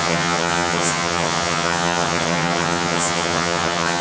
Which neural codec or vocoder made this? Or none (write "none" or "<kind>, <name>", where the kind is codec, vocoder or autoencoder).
vocoder, HiFi-GAN